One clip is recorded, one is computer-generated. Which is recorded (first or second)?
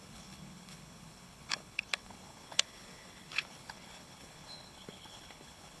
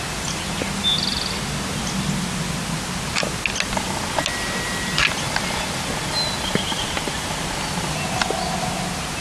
second